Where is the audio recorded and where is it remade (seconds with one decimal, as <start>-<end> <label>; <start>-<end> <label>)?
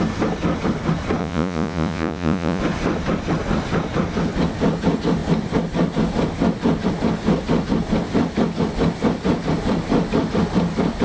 0.0-1.2 recorded; 1.2-2.6 remade; 2.6-11.0 recorded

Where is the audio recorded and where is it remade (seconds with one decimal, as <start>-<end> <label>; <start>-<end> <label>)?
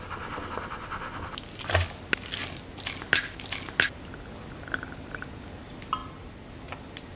0.0-6.0 recorded; 6.0-6.5 remade; 6.5-7.2 recorded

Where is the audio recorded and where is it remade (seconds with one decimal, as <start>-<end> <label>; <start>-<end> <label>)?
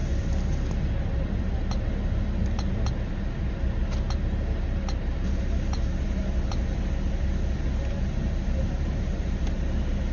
0.0-10.1 recorded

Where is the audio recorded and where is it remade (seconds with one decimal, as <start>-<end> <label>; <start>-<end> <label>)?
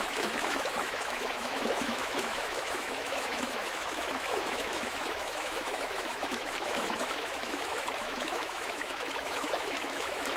0.0-10.4 remade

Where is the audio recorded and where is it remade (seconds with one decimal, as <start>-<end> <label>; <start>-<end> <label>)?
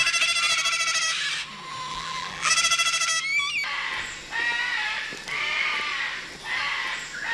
0.0-1.9 recorded; 1.9-2.5 remade; 2.5-7.3 recorded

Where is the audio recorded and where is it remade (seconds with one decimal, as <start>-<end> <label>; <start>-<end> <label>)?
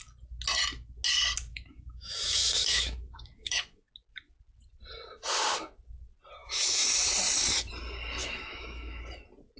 0.0-1.5 recorded; 1.5-3.9 remade; 3.9-6.4 recorded; 6.4-7.1 remade; 7.1-8.2 recorded; 8.2-9.0 remade; 9.0-9.6 recorded